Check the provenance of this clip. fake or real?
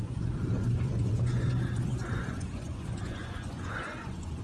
fake